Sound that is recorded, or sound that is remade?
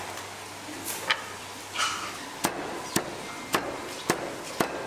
recorded